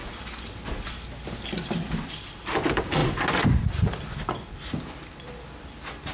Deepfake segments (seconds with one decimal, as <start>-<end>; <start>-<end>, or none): none